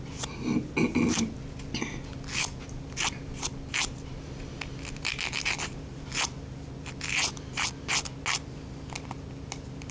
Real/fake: real